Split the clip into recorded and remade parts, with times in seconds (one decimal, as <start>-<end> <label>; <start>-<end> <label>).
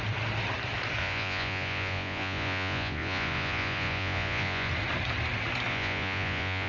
0.0-1.0 recorded; 1.0-4.7 remade; 4.7-5.7 recorded; 5.7-6.7 remade